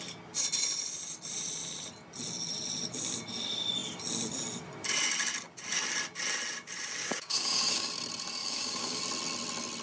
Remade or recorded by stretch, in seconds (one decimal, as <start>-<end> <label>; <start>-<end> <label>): 0.0-7.0 recorded; 7.0-7.9 remade; 7.9-8.4 recorded; 8.4-9.0 remade; 9.0-9.8 recorded